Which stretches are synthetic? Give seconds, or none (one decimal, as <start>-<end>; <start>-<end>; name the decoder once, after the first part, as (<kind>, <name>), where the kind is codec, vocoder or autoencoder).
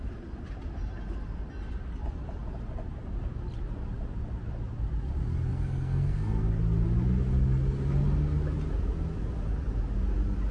5.5-6.5 (codec, SNAC)